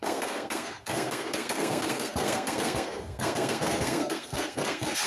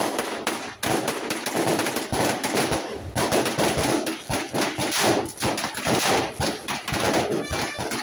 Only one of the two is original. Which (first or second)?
second